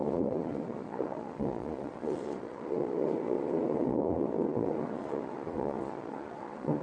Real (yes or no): no